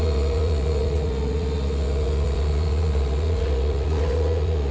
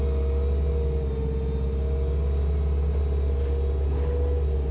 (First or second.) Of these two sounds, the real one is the second